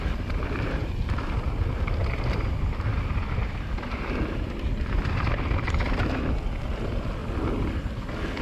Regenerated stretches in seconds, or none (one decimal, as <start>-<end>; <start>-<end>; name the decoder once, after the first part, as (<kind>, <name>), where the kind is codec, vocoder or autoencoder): none